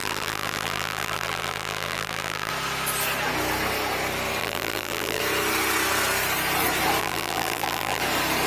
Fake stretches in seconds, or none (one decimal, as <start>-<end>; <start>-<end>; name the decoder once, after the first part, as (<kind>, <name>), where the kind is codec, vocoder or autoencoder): 0.0-2.5 (vocoder, BigVGAN v2); 4.4-5.2; 7.0-8.0